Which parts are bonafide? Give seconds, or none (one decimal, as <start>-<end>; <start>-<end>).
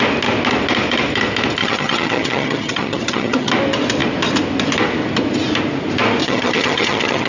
0.0-1.6; 3.5-6.2